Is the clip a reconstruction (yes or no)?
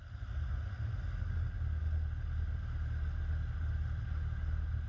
no